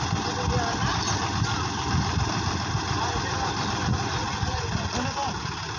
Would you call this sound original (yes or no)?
yes